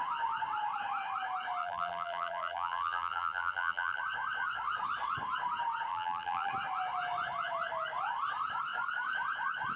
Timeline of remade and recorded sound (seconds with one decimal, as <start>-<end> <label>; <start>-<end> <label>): 0.0-1.6 recorded; 1.6-4.0 remade; 4.0-5.9 recorded; 5.9-6.5 remade; 6.5-9.8 recorded